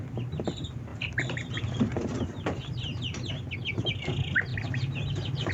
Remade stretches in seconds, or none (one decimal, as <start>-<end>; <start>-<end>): 0.9-3.3; 4.5-5.5

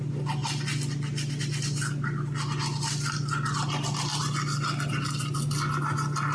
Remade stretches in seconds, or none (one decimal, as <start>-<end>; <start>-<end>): none